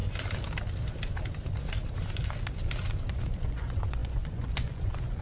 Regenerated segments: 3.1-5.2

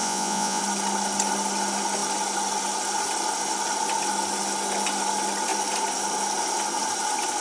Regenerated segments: 0.0-0.6